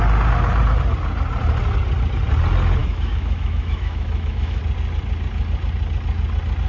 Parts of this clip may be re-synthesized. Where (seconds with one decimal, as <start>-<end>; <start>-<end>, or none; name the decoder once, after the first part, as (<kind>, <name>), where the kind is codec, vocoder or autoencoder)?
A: 2.8-4.6 (autoencoder, DAC-VAE)